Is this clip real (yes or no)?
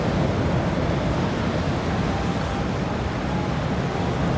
yes